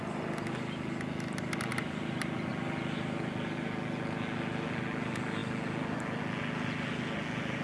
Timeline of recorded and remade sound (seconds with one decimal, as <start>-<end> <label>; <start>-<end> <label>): 0.0-1.7 recorded; 1.7-2.5 remade; 2.5-7.6 recorded